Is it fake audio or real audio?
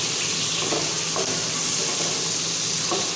real